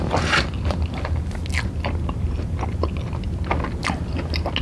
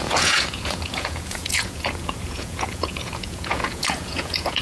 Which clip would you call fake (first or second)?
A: second